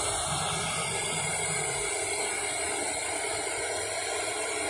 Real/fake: real